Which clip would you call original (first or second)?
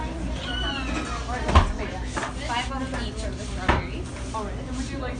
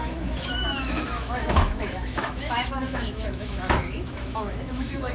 first